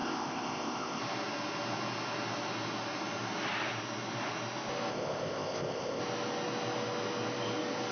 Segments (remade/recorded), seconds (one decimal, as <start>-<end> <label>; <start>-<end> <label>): 0.0-1.0 remade; 1.0-4.9 recorded; 4.9-6.0 remade; 6.0-7.9 recorded